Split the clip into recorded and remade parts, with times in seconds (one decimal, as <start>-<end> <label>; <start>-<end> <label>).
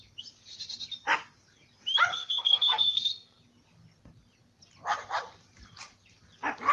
0.0-2.1 recorded; 2.1-3.4 remade; 3.4-6.7 recorded